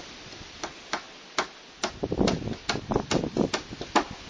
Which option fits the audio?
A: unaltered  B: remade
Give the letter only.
A